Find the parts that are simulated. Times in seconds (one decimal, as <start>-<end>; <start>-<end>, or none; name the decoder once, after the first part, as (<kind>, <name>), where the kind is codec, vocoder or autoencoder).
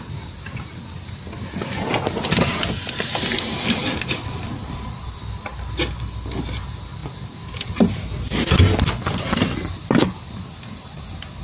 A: none